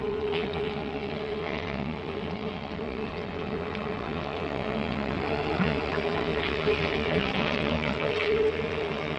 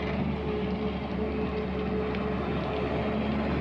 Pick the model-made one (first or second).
first